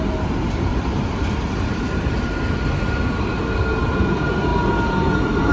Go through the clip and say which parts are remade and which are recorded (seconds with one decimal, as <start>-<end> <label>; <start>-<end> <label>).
0.0-5.5 recorded

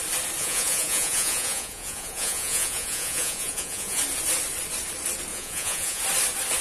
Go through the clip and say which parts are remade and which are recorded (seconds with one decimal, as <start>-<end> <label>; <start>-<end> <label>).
0.0-0.4 recorded; 0.4-4.0 remade; 4.0-5.3 recorded; 5.3-6.0 remade; 6.0-6.6 recorded

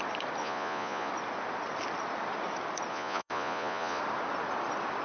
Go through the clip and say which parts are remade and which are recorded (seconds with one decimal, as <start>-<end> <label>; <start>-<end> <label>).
0.0-0.4 recorded; 0.4-1.1 remade; 1.1-2.9 recorded; 2.9-4.0 remade; 4.0-5.0 recorded

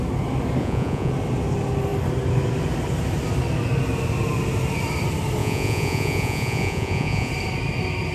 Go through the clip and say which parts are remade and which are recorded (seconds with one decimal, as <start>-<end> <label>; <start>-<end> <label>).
0.0-0.6 recorded; 0.6-1.1 remade; 1.1-5.4 recorded; 5.4-7.3 remade; 7.3-8.1 recorded